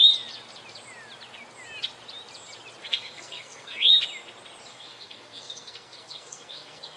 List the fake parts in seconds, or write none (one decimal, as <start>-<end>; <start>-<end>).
2.8-3.9; 4.7-7.0